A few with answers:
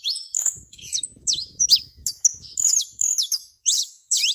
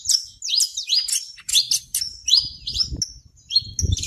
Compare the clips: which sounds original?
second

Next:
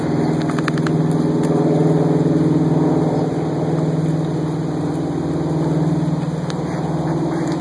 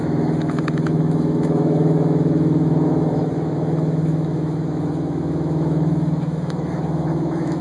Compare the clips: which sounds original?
first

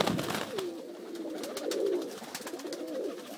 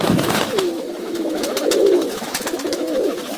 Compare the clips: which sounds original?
first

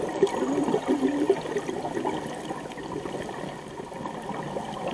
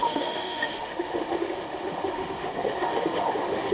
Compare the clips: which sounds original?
first